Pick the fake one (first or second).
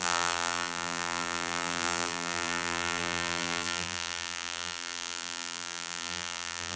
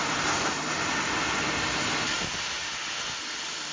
first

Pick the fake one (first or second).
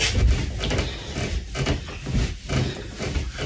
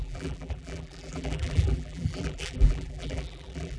second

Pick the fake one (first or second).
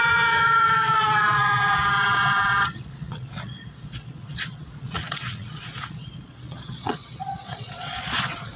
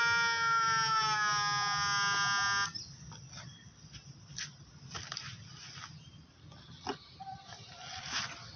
first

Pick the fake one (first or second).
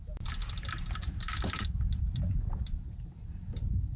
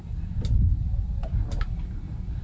first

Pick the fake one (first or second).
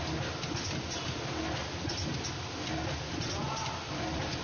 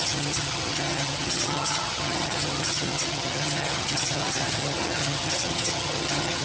second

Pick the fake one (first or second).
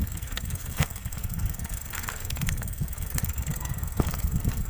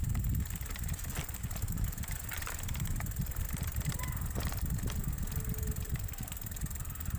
first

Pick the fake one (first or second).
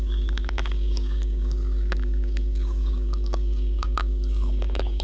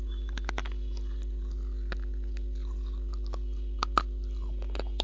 first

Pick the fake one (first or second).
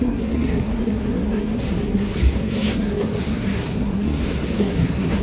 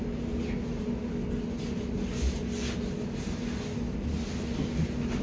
first